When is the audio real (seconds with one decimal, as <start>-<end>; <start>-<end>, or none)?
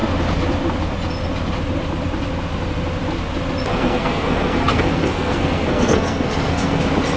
0.0-3.7; 6.8-7.2